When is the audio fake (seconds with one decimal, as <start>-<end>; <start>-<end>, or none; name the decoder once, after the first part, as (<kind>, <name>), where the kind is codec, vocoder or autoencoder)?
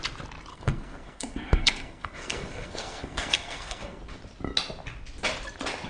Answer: 0.5-4.0 (codec, SNAC)